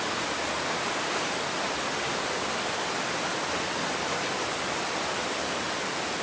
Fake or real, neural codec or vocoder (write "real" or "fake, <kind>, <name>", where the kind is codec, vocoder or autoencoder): real